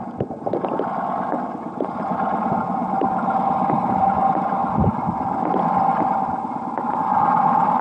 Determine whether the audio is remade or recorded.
recorded